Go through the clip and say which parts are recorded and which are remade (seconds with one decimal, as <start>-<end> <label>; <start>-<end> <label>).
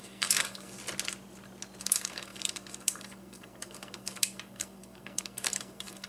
0.0-0.8 remade; 0.8-1.8 recorded; 1.8-6.1 remade